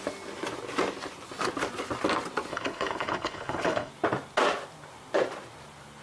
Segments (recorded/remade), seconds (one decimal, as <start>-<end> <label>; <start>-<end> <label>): 0.0-2.5 recorded; 2.5-3.9 remade; 3.9-6.0 recorded